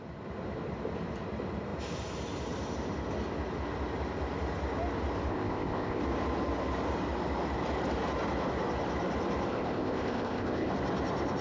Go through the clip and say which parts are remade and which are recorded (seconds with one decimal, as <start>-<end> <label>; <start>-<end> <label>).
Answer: 0.0-5.3 recorded; 5.3-6.0 remade; 6.0-9.5 recorded; 9.5-10.7 remade; 10.7-11.4 recorded